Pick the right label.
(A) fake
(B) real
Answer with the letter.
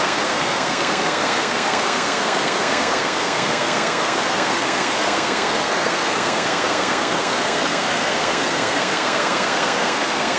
A